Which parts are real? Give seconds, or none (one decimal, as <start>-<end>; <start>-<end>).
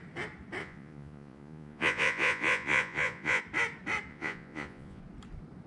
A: 0.0-0.6; 3.4-4.1; 5.0-5.7